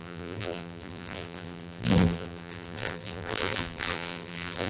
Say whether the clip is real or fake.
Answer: fake